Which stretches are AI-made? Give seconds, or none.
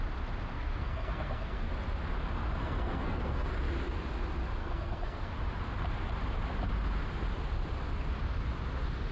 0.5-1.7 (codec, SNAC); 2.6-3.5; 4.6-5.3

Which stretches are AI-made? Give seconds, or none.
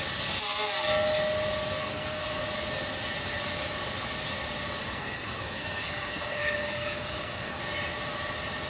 1.8-2.4 (codec, SNAC); 4.8-7.6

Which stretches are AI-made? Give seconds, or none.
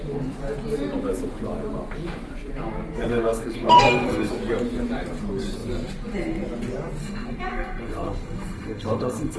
3.1-4.3 (codec, SNAC); 7.0-9.4